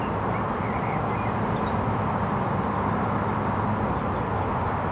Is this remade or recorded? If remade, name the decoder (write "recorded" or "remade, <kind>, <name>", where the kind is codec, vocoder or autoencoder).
recorded